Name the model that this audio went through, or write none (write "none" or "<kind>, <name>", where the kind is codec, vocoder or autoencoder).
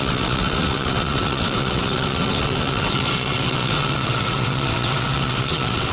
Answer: vocoder, WaveNeXt